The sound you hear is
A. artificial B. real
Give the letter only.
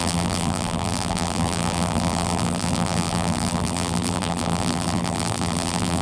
A